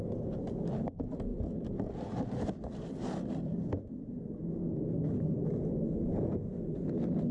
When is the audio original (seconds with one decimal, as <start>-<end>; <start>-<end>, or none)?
0.0-1.3; 3.9-7.3